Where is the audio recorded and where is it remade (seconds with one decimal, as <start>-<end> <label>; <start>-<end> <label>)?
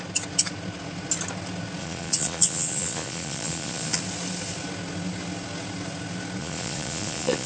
0.0-1.8 recorded; 1.8-4.0 remade; 4.0-6.4 recorded; 6.4-7.5 remade